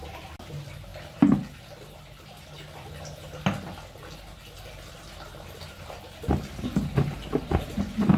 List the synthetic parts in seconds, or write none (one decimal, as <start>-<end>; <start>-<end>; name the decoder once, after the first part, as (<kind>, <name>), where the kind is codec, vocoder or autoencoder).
none